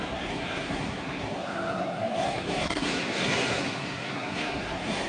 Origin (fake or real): fake